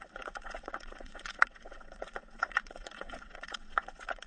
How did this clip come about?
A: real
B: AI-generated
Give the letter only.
B